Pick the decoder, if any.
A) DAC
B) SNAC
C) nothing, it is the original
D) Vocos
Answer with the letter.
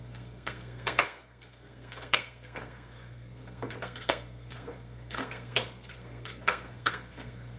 B